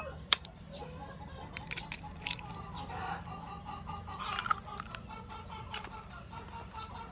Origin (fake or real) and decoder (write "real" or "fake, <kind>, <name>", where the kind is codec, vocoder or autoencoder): real